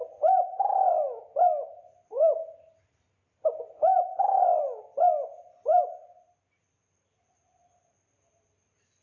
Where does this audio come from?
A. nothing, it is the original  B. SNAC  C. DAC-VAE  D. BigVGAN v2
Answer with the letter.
A